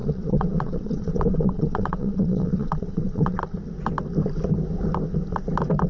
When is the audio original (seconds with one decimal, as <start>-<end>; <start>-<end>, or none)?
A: 3.4-5.9